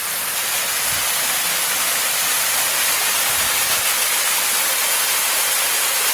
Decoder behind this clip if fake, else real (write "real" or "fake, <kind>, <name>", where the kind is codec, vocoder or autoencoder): real